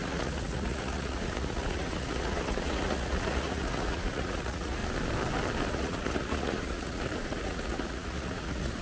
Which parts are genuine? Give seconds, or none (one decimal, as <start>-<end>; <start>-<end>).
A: 4.8-5.7